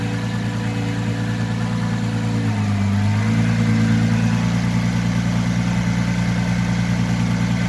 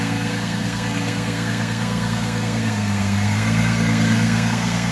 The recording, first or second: first